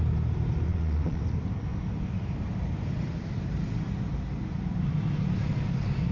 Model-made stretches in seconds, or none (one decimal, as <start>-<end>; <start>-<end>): 0.7-1.2